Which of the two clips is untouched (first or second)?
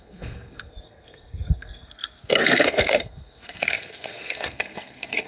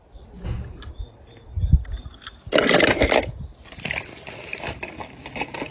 second